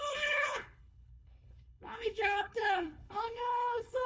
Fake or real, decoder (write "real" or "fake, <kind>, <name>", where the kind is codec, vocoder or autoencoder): fake, codec, HILCodec